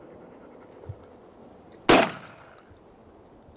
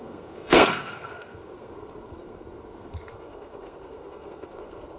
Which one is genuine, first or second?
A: first